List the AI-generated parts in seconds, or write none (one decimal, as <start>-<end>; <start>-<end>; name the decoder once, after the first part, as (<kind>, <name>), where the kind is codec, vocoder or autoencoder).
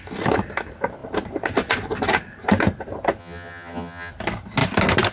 3.2-4.1 (vocoder, HiFi-GAN)